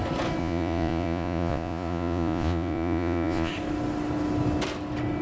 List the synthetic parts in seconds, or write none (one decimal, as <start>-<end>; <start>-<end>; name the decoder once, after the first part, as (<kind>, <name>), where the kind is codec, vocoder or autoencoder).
0.4-3.5 (vocoder, Vocos)